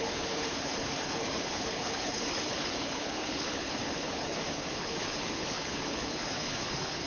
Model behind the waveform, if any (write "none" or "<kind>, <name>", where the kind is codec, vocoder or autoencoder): codec, HILCodec